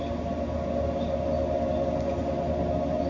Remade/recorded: recorded